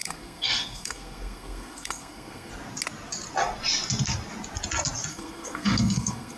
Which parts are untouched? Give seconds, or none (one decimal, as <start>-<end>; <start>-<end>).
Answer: 2.5-5.1